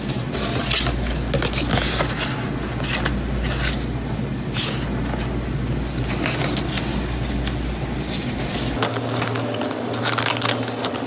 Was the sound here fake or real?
real